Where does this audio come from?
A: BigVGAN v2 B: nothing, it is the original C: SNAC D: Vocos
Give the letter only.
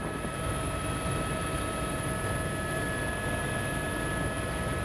B